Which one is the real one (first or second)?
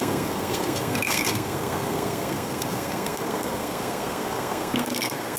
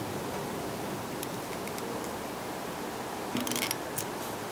second